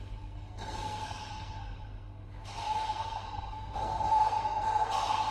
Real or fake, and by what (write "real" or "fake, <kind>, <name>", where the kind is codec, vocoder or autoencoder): fake, codec, SNAC